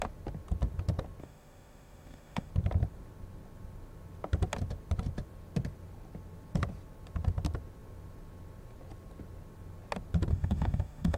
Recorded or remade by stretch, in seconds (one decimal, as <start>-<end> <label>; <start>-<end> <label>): 0.0-1.2 recorded; 1.2-2.5 remade; 2.5-10.3 recorded; 10.3-11.2 remade